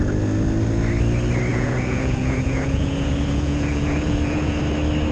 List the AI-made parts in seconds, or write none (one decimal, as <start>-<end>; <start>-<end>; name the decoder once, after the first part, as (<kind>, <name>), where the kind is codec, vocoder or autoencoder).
1.5-4.6 (vocoder, Vocos)

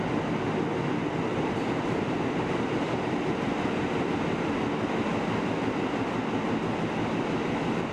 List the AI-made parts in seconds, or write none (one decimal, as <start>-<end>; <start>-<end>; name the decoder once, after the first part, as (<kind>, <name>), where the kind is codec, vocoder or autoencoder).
1.3-2.2 (vocoder, BigVGAN v2)

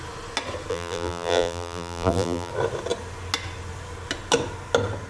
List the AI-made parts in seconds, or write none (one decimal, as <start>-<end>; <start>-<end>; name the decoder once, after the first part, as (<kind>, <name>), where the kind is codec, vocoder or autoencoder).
0.7-2.5 (vocoder, BigVGAN v2)

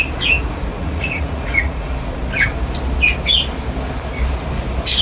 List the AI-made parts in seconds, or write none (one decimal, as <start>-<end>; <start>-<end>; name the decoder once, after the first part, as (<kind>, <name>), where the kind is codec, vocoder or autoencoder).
0.7-1.9 (vocoder, Vocos)

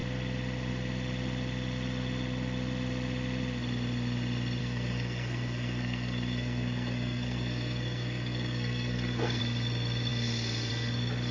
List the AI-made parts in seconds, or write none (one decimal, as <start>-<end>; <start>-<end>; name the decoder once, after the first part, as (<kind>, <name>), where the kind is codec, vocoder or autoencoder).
4.6-9.4 (codec, SNAC)

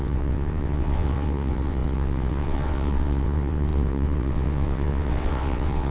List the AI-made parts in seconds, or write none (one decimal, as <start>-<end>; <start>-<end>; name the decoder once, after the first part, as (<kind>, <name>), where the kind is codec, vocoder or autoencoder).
0.0-5.9 (vocoder, WaveNeXt)